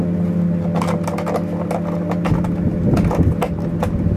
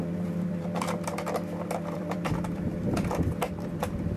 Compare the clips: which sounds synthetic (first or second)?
second